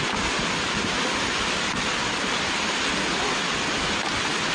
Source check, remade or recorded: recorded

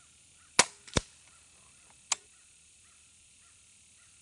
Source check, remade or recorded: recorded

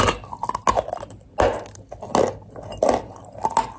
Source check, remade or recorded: recorded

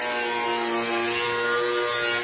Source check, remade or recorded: recorded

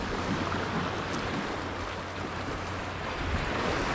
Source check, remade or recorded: recorded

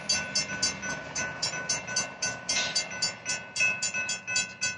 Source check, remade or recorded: recorded